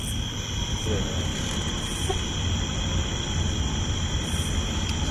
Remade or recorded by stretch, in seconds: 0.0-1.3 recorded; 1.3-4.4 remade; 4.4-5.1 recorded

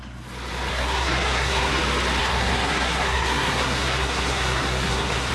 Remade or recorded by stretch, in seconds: 0.0-0.7 recorded; 0.7-1.8 remade; 1.8-2.2 recorded; 2.2-5.3 remade

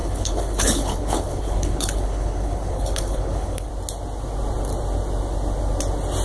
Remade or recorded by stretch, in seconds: 0.0-3.7 remade; 3.7-6.2 recorded